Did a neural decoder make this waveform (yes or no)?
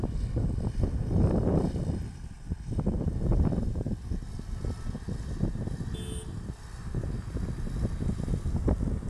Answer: no